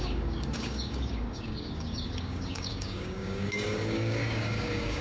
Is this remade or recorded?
remade